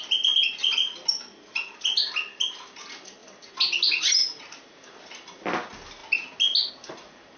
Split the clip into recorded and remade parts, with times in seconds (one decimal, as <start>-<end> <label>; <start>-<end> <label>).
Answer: 0.0-7.4 recorded